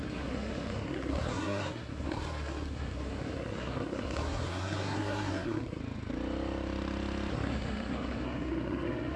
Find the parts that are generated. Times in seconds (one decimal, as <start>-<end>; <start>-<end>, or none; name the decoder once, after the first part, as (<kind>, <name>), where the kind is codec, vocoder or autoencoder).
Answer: 0.0-5.8 (codec, SNAC); 7.3-9.2